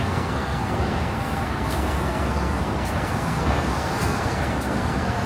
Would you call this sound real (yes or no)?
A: no